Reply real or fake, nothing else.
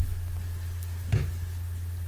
real